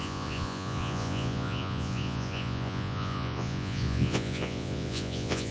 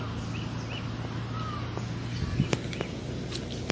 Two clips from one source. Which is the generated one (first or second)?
first